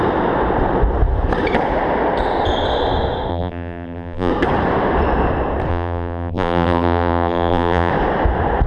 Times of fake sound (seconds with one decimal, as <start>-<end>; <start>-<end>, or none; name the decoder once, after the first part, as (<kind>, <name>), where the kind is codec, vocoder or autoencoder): 3.3-4.3 (vocoder, BigVGAN v2); 5.7-7.9